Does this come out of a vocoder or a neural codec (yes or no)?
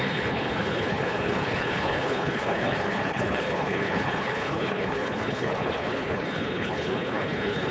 yes